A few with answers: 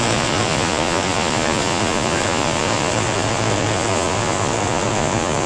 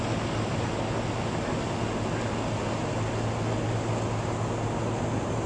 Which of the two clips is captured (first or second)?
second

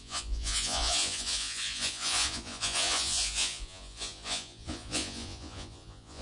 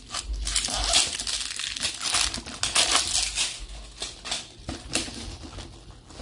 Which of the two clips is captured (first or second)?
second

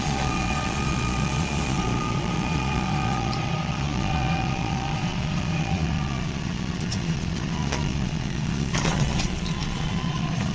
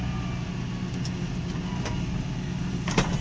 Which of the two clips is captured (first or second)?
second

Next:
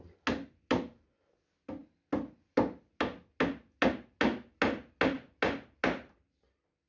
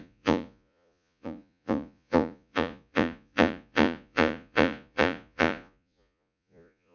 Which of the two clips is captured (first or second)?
first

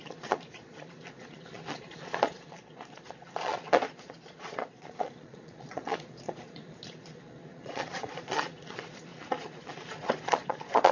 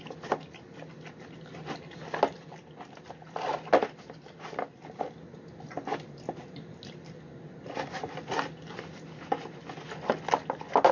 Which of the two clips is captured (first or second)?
second